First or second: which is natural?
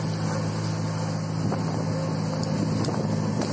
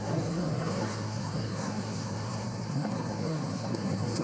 first